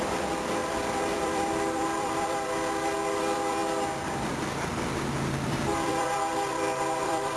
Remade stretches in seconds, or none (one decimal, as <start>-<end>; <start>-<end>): 0.0-3.6; 4.1-7.4